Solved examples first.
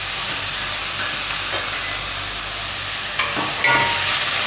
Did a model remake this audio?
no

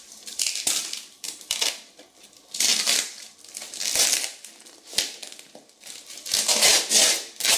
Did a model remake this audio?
yes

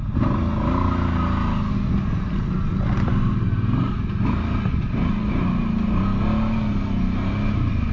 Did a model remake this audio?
no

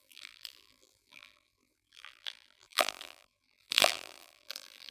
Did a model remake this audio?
yes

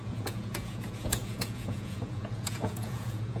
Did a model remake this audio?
yes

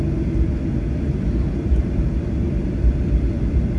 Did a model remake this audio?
no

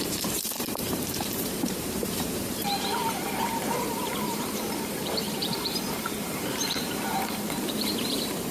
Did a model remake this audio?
yes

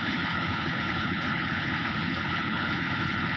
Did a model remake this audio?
yes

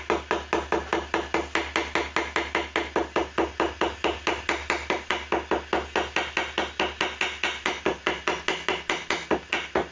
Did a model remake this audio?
no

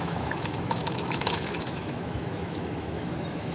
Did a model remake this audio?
yes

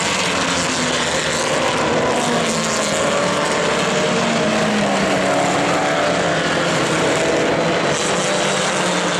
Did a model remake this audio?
no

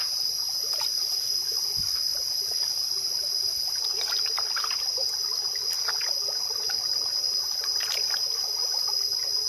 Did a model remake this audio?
no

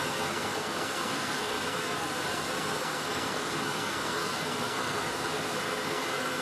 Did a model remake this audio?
yes